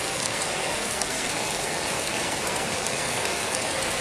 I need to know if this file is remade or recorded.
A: remade